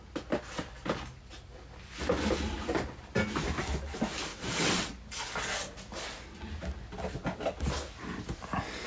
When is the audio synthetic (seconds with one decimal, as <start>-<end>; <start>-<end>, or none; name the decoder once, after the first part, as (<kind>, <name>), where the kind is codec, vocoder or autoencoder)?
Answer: 4.3-4.9 (vocoder, WaveNeXt)